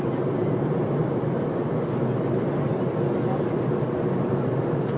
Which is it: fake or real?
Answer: real